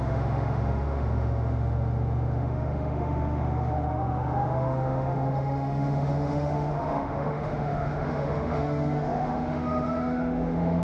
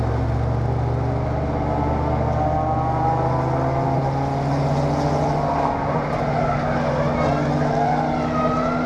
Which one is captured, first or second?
second